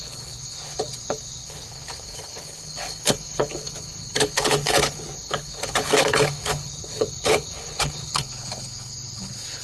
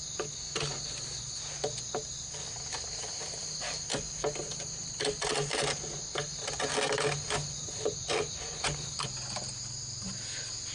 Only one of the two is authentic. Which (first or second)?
second